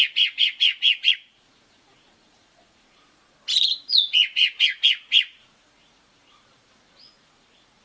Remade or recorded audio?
remade